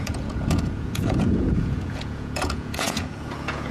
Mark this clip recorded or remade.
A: remade